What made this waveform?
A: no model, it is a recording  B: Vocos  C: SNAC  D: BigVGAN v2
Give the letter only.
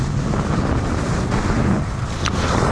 A